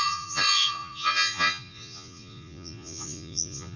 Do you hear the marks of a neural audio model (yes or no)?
yes